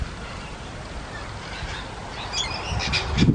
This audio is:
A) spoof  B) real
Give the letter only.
B